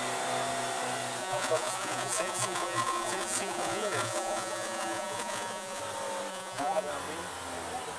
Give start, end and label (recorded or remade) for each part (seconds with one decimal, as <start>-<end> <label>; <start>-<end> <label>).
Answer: 0.0-1.2 recorded; 1.2-5.8 remade; 5.8-6.3 recorded; 6.3-6.9 remade; 6.9-8.0 recorded

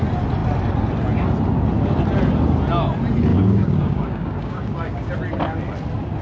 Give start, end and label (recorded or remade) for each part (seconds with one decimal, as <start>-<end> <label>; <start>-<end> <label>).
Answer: 0.0-3.3 recorded; 3.3-5.1 remade; 5.1-6.2 recorded

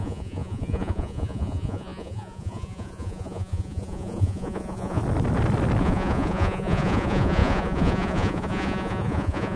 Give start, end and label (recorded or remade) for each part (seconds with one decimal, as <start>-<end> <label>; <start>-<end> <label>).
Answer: 0.0-5.0 remade; 5.0-5.8 recorded; 5.8-9.6 remade

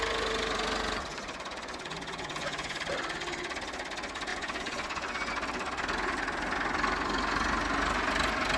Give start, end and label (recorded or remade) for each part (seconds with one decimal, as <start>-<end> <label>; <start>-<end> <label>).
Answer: 0.0-1.1 recorded; 1.1-2.8 remade; 2.8-4.3 recorded; 4.3-5.3 remade; 5.3-8.6 recorded

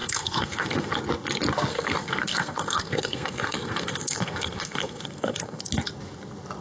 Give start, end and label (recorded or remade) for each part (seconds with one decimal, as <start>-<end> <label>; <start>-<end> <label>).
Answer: 0.0-0.9 remade; 0.9-1.7 recorded; 1.7-5.6 remade; 5.6-6.6 recorded

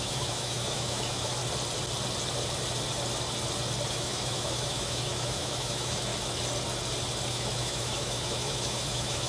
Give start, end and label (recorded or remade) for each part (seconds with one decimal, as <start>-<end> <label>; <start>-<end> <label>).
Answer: 0.0-1.4 remade; 1.4-3.9 recorded; 3.9-6.1 remade; 6.1-7.3 recorded; 7.3-9.3 remade